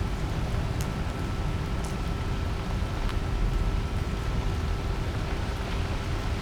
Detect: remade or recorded recorded